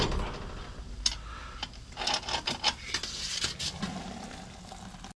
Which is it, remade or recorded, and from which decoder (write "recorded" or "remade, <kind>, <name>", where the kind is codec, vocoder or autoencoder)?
recorded